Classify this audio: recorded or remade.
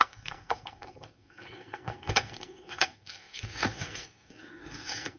remade